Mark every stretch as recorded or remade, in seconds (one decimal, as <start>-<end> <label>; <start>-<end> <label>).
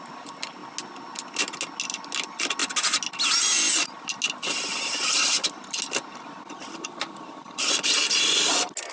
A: 0.0-8.9 recorded